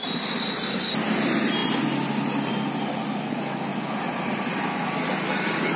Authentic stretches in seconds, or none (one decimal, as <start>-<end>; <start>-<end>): 0.0-5.8